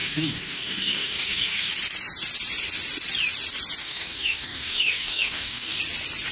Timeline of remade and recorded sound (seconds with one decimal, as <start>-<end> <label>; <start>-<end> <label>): 0.0-1.7 remade; 1.7-3.8 recorded; 3.8-5.8 remade; 5.8-6.3 recorded